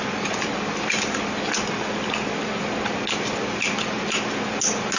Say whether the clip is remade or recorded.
recorded